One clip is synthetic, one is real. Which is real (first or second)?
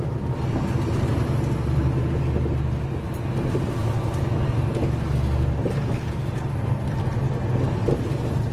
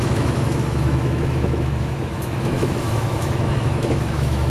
first